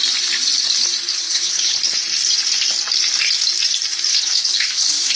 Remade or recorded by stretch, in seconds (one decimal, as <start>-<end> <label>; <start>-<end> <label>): 0.0-1.1 recorded; 1.1-1.8 remade; 1.8-4.1 recorded; 4.1-5.2 remade

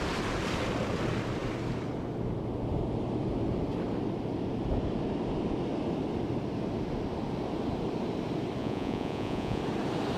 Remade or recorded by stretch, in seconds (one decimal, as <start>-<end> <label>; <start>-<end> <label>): 0.0-8.6 recorded; 8.6-9.6 remade; 9.6-10.2 recorded

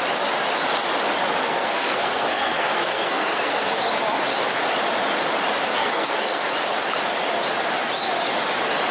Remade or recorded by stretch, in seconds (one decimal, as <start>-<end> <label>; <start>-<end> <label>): 0.0-1.4 recorded; 1.4-3.7 remade; 3.7-5.8 recorded; 5.8-6.4 remade; 6.4-8.9 recorded

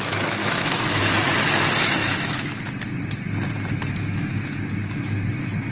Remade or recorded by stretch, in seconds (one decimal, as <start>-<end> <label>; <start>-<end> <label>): 0.0-0.4 recorded; 0.4-1.0 remade; 1.0-2.0 recorded; 2.0-2.6 remade; 2.6-3.8 recorded; 3.8-4.6 remade; 4.6-5.7 recorded

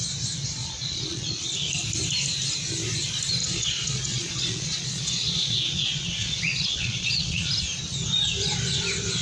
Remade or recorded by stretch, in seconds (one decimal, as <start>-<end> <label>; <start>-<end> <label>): 0.0-0.6 recorded; 0.6-1.5 remade; 1.5-3.4 recorded; 3.4-7.5 remade; 7.5-9.2 recorded

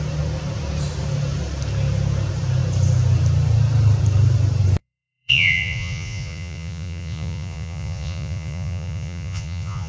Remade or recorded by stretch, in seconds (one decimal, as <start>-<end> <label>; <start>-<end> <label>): 0.0-4.8 recorded; 4.8-9.9 remade

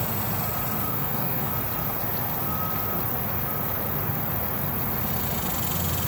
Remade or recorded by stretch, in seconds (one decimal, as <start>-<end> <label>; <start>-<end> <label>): 0.0-0.9 recorded; 0.9-1.5 remade; 1.5-6.1 recorded